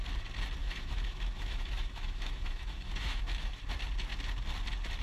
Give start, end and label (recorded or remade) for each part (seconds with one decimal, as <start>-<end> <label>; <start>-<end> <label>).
0.0-0.6 recorded; 0.6-3.6 remade; 3.6-5.0 recorded